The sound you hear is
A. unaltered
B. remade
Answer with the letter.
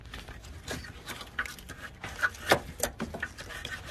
A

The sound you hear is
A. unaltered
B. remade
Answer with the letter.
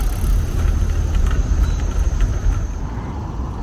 A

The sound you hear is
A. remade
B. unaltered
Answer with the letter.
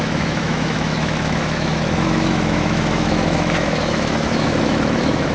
A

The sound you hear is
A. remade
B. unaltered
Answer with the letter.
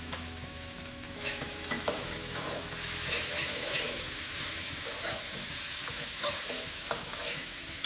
A